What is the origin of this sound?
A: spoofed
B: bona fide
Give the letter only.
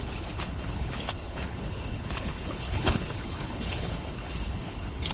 A